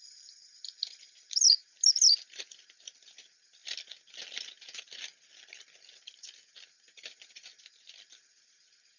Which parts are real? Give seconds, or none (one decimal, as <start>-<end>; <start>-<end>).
3.6-5.8